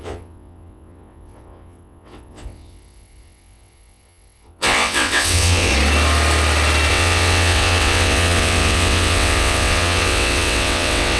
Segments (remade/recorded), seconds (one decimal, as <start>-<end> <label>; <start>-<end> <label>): 0.0-5.7 remade; 5.7-6.9 recorded; 6.9-11.2 remade